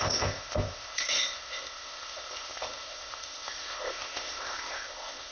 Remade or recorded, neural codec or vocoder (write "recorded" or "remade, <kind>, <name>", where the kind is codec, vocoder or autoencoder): remade, codec, ZipCodec